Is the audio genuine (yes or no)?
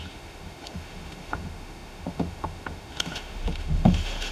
no